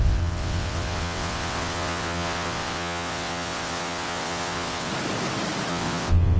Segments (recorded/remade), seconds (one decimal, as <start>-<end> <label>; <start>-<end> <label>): 0.0-4.9 remade; 4.9-5.7 recorded; 5.7-6.4 remade